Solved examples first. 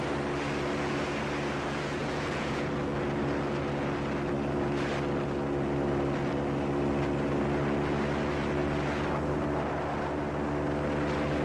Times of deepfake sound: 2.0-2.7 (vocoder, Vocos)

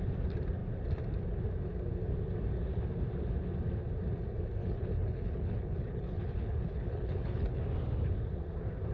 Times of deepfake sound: 4.6-7.6 (codec, HILCodec)

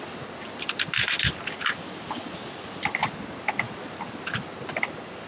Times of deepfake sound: none